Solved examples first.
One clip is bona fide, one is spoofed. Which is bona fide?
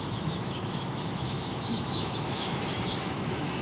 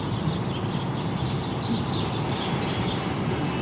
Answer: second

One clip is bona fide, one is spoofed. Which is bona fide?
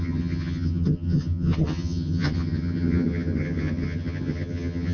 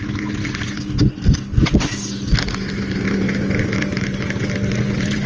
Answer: second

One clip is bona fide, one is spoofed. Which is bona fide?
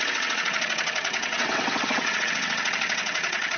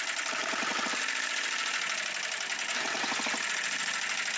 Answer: second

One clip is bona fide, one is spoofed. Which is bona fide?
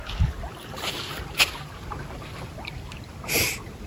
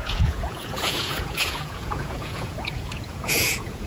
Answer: first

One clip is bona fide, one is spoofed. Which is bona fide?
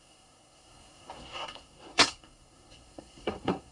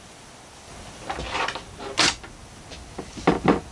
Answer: second